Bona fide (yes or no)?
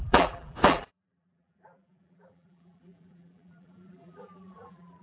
no